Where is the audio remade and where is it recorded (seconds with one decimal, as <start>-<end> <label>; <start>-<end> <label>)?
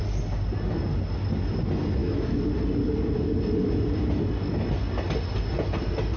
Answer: 0.0-2.0 recorded; 2.0-2.5 remade; 2.5-6.2 recorded